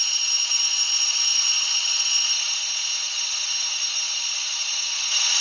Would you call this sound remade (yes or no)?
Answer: yes